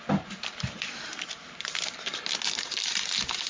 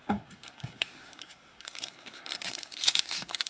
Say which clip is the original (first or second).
first